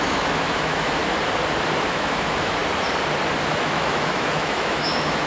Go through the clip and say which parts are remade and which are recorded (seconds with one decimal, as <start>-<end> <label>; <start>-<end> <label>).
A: 0.0-1.0 remade; 1.0-1.9 recorded; 1.9-2.6 remade; 2.6-3.5 recorded; 3.5-5.3 remade